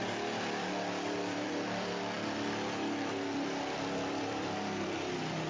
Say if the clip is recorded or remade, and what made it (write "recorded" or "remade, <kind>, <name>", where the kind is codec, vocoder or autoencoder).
remade, vocoder, BigVGAN v2